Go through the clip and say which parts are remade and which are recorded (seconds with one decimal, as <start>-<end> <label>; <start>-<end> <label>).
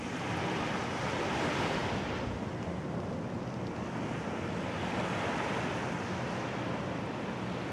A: 0.0-7.7 recorded